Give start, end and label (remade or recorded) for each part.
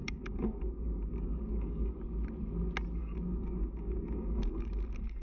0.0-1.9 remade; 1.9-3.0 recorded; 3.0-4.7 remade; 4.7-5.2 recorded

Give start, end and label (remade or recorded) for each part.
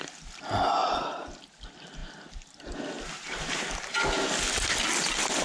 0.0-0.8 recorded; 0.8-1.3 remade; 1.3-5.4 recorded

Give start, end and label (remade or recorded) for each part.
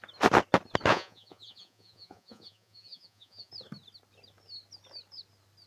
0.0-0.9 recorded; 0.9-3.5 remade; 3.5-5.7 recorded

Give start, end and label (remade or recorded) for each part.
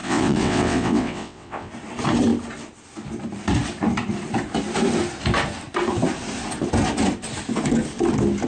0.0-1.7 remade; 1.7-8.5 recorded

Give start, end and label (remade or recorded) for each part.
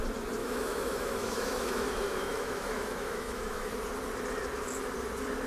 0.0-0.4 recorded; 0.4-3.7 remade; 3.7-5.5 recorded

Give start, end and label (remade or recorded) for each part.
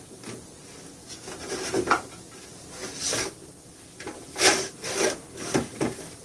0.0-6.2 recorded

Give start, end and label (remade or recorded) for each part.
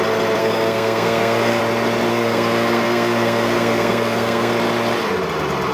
0.0-0.4 recorded; 0.4-1.6 remade; 1.6-2.1 recorded; 2.1-4.5 remade; 4.5-5.7 recorded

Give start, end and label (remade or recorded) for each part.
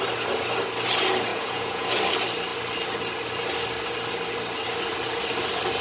0.0-1.3 recorded; 1.3-1.9 remade; 1.9-5.8 recorded